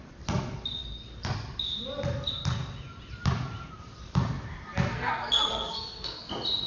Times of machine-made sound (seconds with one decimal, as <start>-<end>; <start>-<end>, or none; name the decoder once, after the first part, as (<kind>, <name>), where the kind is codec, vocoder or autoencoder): 4.9-6.3 (codec, SNAC)